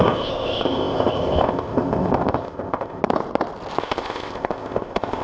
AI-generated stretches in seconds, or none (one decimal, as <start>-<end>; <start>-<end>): 0.0-3.0; 3.8-5.2